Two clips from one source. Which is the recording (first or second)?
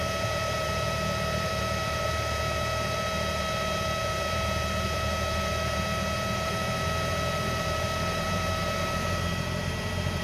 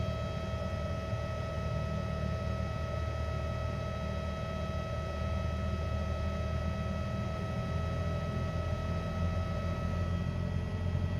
second